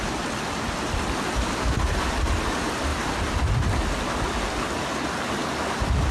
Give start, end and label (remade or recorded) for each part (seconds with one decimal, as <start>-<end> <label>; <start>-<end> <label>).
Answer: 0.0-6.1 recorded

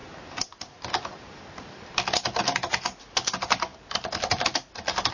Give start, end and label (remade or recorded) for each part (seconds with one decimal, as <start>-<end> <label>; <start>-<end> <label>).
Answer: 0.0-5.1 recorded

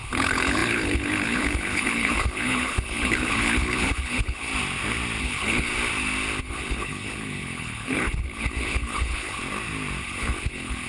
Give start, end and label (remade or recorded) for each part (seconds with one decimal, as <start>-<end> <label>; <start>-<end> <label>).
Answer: 0.0-4.5 remade; 4.5-5.2 recorded; 5.2-5.7 remade; 5.7-6.4 recorded; 6.4-9.4 remade; 9.4-10.0 recorded; 10.0-10.9 remade